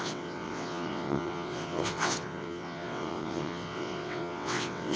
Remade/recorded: remade